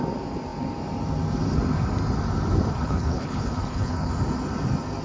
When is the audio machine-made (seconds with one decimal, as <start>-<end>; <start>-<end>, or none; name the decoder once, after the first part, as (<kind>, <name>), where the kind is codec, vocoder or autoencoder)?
2.7-4.1 (codec, HILCodec)